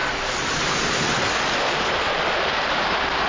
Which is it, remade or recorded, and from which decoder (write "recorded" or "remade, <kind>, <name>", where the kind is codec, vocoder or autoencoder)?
recorded